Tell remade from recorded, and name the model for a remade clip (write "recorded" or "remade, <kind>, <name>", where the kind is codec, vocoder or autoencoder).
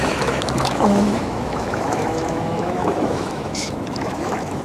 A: remade, autoencoder, DAC-VAE